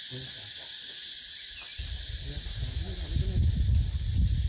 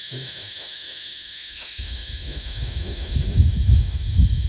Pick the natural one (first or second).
first